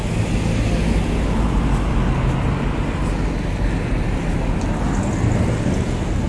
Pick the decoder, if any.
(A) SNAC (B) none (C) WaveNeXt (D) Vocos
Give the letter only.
B